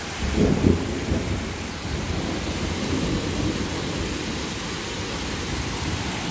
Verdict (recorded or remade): recorded